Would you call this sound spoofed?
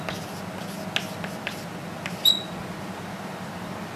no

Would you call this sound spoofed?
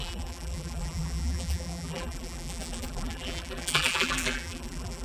yes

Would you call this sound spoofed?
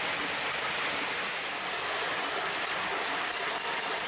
yes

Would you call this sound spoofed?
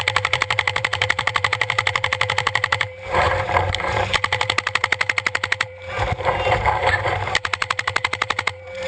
yes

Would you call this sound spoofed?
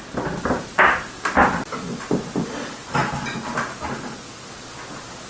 no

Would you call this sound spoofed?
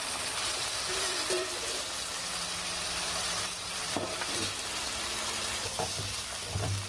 yes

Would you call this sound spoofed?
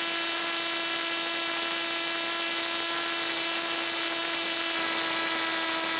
yes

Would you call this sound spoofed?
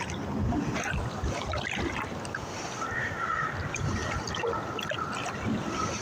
no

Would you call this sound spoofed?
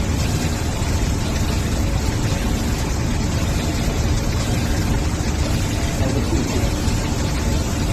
no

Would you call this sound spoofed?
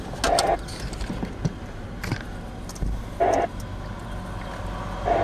no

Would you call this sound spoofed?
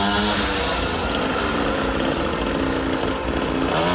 no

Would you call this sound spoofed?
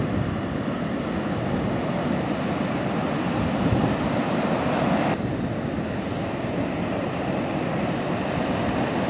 no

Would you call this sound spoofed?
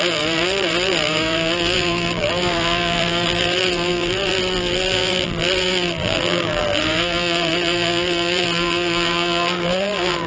yes